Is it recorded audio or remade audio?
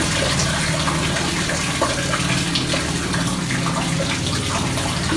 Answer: recorded